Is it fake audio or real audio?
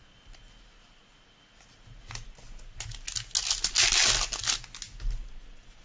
real